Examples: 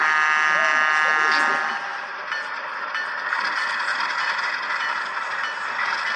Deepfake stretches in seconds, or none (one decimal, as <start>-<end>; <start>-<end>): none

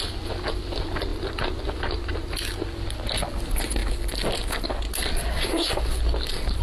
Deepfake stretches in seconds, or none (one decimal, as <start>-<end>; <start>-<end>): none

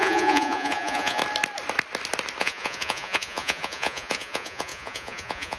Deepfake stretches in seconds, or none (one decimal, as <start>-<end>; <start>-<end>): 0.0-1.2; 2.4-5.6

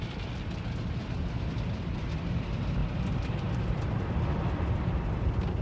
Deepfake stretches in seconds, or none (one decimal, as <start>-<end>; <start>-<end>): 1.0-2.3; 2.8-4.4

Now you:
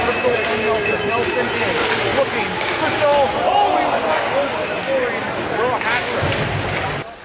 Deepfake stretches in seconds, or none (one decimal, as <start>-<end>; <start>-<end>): none